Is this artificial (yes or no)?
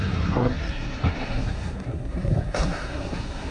yes